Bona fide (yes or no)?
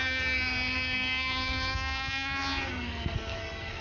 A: no